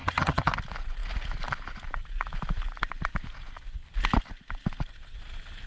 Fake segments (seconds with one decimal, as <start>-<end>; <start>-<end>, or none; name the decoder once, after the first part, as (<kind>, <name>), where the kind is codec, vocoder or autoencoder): 0.0-0.5 (vocoder, HiFi-GAN)